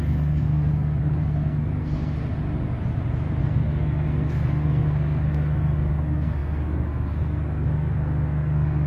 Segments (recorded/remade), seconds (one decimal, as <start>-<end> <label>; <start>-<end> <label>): 0.0-2.2 remade; 2.2-3.4 recorded; 3.4-8.9 remade